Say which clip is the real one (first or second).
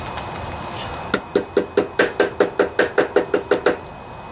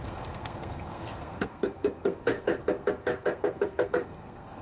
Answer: first